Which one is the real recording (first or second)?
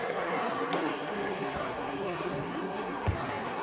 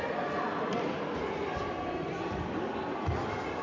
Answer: second